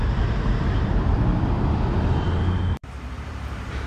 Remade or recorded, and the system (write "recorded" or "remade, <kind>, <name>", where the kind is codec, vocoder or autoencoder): remade, vocoder, BigVGAN v2